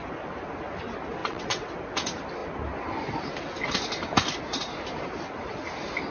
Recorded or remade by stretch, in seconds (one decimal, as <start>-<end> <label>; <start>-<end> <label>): 0.0-1.2 recorded; 1.2-1.7 remade; 1.7-6.1 recorded